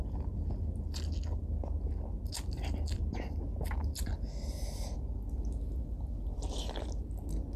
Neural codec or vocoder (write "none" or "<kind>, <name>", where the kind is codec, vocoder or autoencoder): none